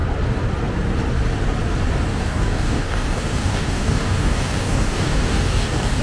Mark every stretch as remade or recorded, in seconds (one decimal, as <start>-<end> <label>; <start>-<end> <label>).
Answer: 0.0-2.1 recorded; 2.1-6.0 remade